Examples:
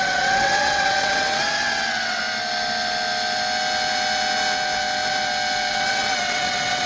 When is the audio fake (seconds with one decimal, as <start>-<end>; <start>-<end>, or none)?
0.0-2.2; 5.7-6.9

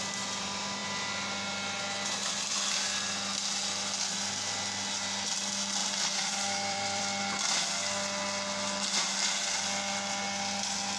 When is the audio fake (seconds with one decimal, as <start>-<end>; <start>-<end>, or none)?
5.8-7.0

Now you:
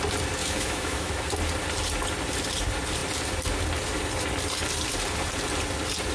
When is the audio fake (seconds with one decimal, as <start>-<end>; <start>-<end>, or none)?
0.4-1.1

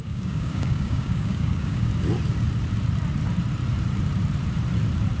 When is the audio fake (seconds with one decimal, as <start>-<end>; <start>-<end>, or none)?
0.0-1.9